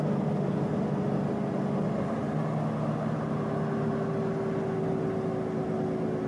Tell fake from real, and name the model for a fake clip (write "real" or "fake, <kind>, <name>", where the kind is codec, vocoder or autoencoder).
real